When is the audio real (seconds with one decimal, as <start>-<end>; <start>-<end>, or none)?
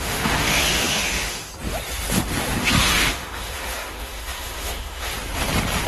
1.5-2.6; 5.1-5.9